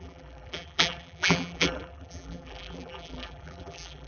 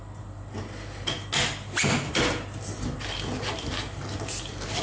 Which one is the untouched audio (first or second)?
second